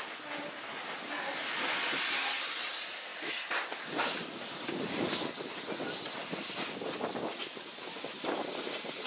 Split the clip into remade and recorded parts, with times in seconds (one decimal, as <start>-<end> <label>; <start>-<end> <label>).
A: 0.0-3.1 recorded; 3.1-5.1 remade; 5.1-9.1 recorded